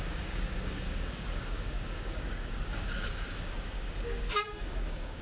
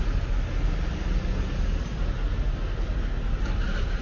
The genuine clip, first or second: second